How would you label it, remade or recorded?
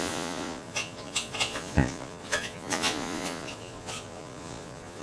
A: remade